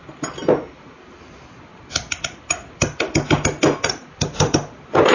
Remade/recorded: recorded